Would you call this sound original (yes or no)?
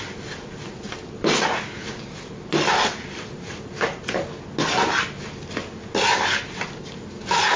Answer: yes